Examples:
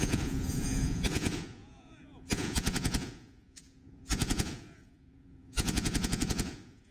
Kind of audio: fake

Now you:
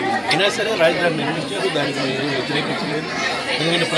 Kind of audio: fake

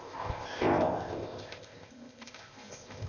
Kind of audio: fake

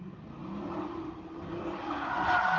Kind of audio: real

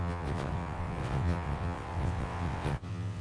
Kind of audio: fake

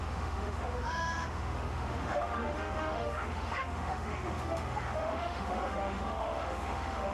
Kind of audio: fake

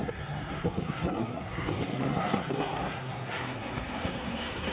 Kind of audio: fake